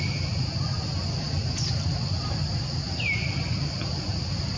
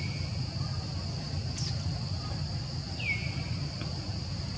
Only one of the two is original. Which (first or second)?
second